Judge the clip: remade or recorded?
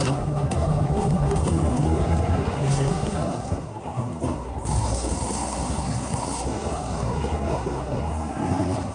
remade